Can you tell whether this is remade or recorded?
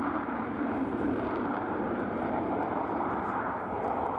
remade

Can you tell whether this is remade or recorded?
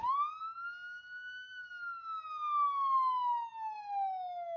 recorded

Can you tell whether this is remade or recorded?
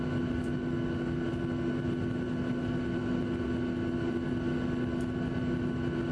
recorded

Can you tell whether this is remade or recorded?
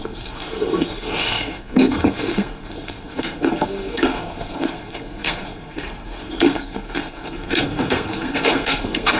remade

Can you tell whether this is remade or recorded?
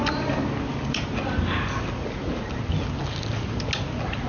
recorded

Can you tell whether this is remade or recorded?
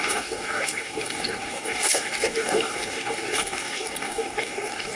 remade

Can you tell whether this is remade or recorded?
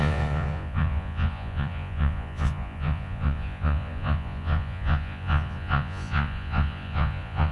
remade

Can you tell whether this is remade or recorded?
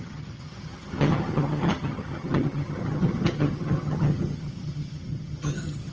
remade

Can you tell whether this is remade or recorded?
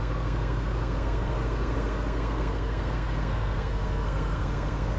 remade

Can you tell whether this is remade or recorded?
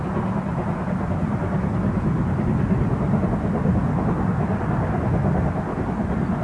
recorded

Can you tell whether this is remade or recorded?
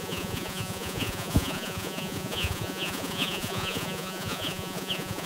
remade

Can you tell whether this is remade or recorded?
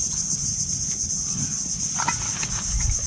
recorded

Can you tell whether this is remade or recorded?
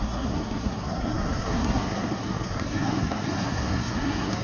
remade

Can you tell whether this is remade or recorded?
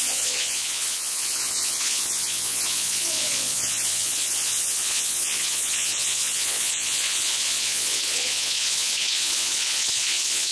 remade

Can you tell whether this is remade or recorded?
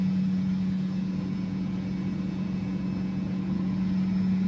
remade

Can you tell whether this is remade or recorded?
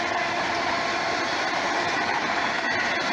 recorded